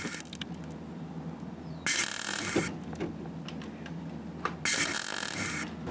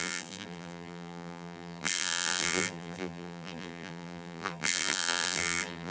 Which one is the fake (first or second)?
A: second